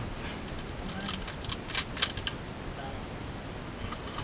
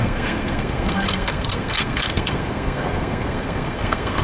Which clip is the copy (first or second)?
second